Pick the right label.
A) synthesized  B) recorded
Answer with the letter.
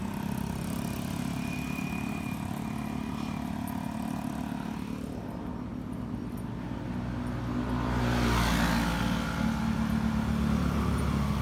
B